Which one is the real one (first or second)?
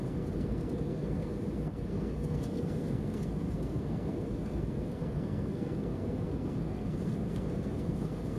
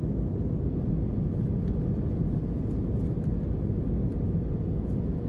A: second